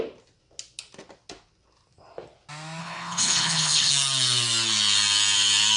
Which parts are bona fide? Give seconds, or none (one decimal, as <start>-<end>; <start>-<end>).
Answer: 0.0-2.8; 3.9-5.8